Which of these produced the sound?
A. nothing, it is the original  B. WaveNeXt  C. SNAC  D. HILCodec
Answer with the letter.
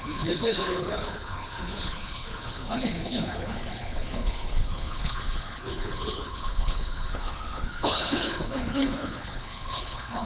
D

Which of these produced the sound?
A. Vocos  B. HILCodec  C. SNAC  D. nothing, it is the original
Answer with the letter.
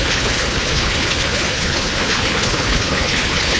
B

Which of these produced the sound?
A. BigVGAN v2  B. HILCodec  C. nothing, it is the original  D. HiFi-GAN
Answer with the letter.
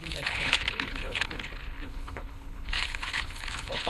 B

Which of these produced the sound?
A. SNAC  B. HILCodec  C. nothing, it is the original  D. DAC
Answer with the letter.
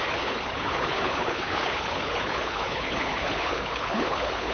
B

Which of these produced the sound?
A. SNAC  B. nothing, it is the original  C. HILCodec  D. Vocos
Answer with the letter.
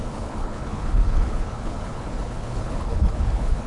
C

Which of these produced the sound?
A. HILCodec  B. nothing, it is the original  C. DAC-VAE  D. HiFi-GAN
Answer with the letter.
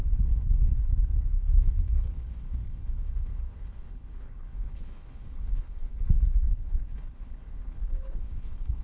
A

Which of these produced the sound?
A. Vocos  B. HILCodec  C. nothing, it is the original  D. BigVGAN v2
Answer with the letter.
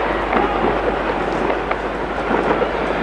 C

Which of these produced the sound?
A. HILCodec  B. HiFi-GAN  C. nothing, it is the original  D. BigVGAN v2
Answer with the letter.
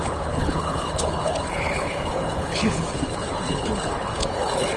A